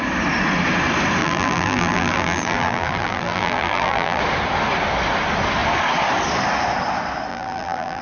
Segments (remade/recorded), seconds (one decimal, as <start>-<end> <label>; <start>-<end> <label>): 0.0-1.2 recorded; 1.2-4.2 remade; 4.2-7.3 recorded; 7.3-8.0 remade